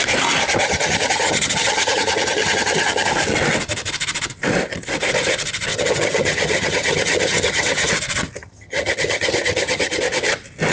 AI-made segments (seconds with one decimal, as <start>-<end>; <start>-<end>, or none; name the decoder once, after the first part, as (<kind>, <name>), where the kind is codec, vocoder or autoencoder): 0.6-3.1 (vocoder, HiFi-GAN); 5.7-7.9; 8.4-10.0